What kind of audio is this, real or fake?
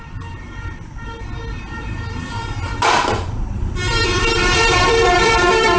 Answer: fake